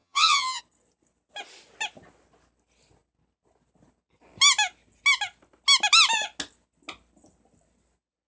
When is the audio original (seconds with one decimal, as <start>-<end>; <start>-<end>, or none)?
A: 0.6-8.3